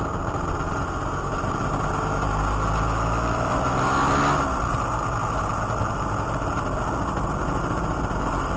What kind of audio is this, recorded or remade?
recorded